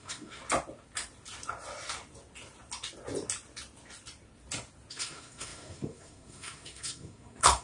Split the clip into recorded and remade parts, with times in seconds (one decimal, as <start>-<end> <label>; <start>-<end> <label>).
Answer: 0.0-0.4 remade; 0.4-4.9 recorded; 4.9-7.6 remade